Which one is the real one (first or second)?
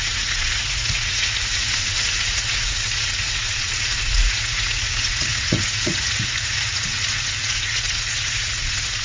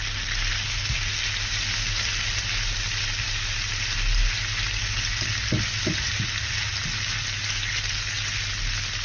second